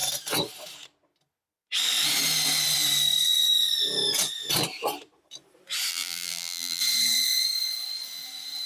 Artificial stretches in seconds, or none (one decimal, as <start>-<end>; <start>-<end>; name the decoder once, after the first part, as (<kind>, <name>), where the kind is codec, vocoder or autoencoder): 5.9-6.8 (vocoder, BigVGAN v2)